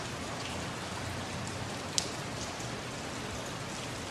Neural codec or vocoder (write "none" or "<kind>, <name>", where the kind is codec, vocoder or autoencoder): none